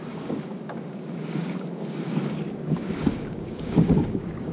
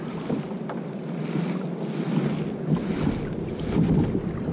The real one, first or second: second